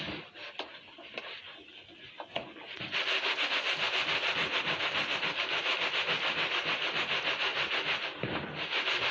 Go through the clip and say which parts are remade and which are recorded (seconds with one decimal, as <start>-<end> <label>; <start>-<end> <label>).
0.0-9.1 recorded